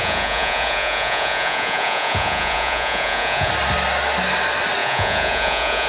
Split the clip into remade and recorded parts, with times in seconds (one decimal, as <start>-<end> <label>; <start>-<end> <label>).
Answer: 0.0-3.5 remade; 3.5-4.8 recorded; 4.8-5.9 remade